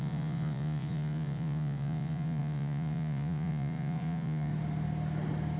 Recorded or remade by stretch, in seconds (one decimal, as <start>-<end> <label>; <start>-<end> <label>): 0.0-4.5 remade; 4.5-5.6 recorded